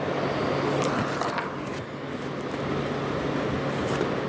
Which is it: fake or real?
real